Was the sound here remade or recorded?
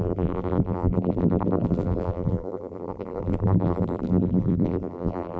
remade